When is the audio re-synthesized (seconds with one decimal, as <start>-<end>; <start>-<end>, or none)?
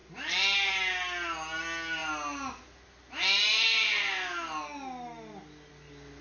none